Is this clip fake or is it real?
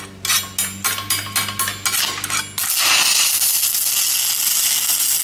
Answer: real